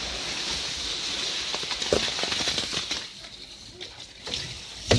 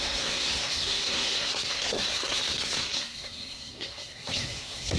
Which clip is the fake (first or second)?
second